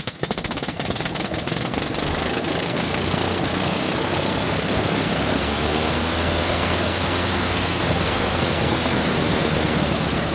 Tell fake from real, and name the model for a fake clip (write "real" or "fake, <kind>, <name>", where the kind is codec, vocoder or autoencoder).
fake, codec, SNAC